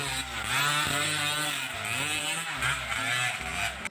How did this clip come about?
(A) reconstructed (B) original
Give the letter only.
B